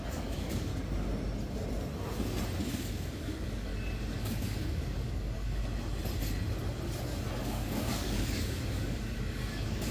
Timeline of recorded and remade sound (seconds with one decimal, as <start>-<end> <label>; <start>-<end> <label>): 0.0-0.7 remade; 0.7-2.7 recorded; 2.7-3.7 remade; 3.7-4.2 recorded; 4.2-5.6 remade; 5.6-7.4 recorded; 7.4-9.9 remade